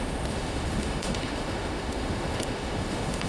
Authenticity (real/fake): fake